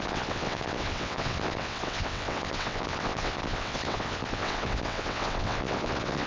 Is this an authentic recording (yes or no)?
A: no